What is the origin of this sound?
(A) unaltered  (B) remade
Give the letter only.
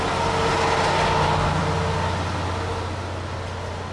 A